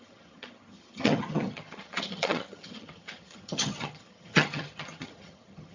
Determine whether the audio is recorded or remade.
remade